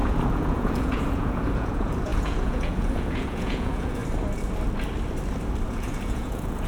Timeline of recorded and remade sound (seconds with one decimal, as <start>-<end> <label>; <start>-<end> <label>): 0.0-4.0 remade; 4.0-5.7 recorded; 5.7-6.7 remade